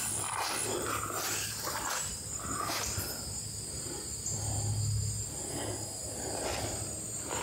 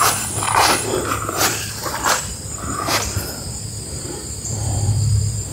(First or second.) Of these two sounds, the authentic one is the first